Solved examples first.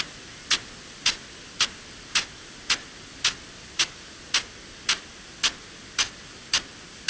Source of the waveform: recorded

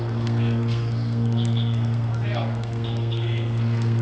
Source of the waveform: remade